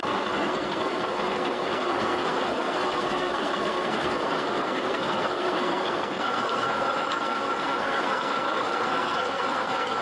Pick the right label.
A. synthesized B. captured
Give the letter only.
A